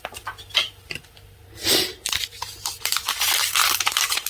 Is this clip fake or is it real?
fake